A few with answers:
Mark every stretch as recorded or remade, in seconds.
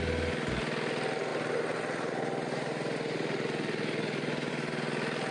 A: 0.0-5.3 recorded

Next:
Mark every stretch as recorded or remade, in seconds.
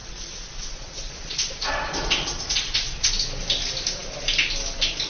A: 0.0-3.1 remade; 3.1-5.1 recorded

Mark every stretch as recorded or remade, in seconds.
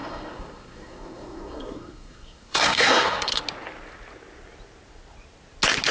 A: 0.0-3.4 remade; 3.4-5.9 recorded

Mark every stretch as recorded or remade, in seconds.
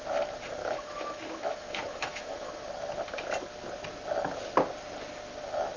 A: 0.0-0.6 recorded; 0.6-2.5 remade; 2.5-5.8 recorded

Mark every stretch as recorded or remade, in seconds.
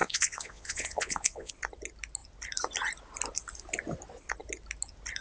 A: 0.0-1.5 remade; 1.5-5.2 recorded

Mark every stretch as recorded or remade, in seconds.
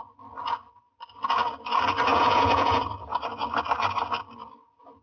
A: 0.0-2.1 recorded; 2.1-2.8 remade; 2.8-5.0 recorded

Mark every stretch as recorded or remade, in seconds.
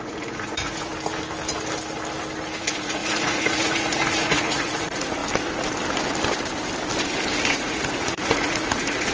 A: 0.0-0.9 remade; 0.9-2.6 recorded; 2.6-5.2 remade; 5.2-7.4 recorded; 7.4-9.1 remade